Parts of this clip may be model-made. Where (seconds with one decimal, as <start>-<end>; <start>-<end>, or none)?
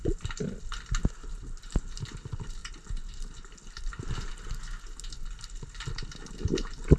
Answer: 2.6-3.9